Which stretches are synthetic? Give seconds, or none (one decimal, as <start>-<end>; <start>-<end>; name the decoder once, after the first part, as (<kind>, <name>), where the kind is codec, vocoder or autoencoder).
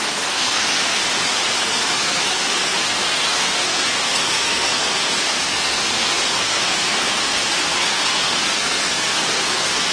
0.0-1.0 (codec, SNAC); 1.6-9.9